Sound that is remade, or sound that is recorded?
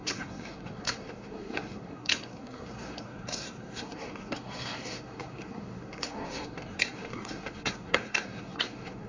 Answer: remade